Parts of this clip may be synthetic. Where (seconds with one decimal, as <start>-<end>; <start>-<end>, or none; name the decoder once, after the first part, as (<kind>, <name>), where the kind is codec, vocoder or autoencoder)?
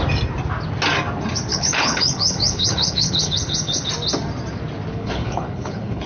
1.5-3.9 (codec, HILCodec); 4.9-6.1